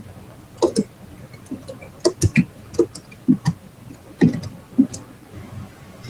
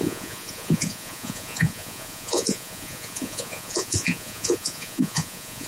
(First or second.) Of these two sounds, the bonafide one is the first